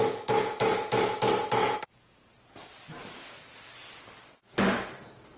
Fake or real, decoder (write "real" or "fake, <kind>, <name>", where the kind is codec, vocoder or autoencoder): real